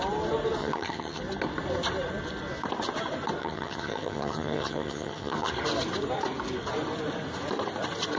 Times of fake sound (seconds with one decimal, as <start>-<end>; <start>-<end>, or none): 0.6-1.2; 3.4-5.5